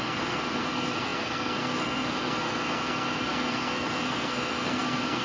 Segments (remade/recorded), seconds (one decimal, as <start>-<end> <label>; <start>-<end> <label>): 0.0-5.2 remade